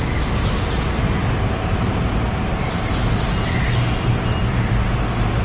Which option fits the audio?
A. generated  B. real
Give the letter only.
B